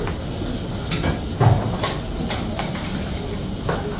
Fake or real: real